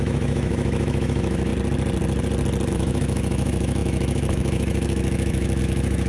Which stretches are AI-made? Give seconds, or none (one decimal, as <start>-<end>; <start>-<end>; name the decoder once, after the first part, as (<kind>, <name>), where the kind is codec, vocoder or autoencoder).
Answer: 0.0-1.5 (autoencoder, DAC-VAE); 2.7-6.1